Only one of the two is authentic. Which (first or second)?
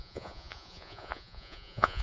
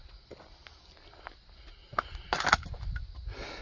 second